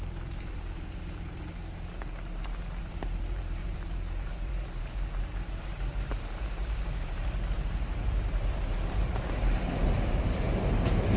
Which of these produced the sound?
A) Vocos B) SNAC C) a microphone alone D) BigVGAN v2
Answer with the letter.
D